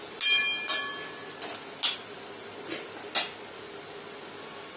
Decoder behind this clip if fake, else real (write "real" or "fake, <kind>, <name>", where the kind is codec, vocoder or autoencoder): real